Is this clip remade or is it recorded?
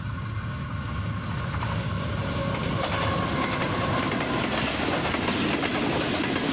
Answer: recorded